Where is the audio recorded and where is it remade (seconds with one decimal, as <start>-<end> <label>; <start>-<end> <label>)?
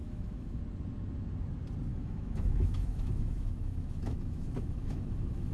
0.0-0.6 remade; 0.6-1.9 recorded; 1.9-5.5 remade